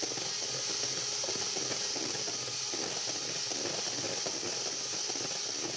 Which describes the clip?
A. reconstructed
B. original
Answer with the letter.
B